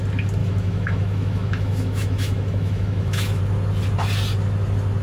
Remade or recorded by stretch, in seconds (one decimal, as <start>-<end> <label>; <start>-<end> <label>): 0.0-0.4 recorded; 0.4-3.4 remade; 3.4-5.0 recorded